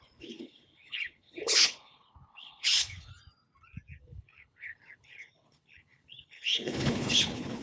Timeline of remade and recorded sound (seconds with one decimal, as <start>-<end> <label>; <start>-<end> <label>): 0.0-3.1 remade; 3.1-4.0 recorded; 4.0-7.6 remade